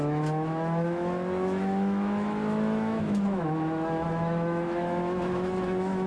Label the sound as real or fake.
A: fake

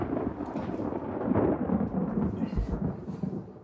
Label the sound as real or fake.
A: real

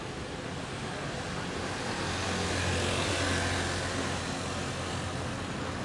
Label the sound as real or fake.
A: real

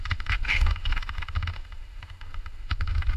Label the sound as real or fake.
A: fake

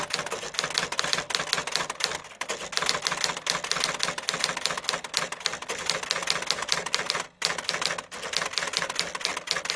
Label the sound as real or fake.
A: real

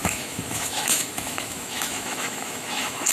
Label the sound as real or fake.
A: fake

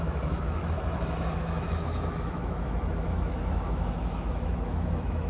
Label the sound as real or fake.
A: fake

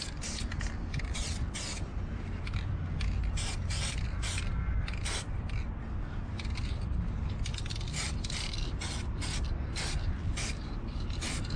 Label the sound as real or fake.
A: real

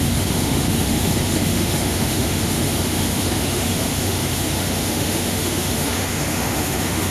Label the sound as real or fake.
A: fake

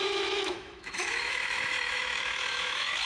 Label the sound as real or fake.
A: fake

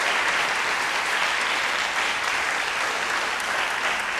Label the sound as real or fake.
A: real